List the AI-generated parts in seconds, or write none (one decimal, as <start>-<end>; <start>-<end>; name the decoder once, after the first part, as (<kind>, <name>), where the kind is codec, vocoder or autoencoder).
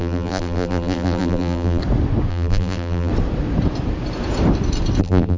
0.0-1.8 (vocoder, BigVGAN v2); 2.3-3.1; 5.0-5.4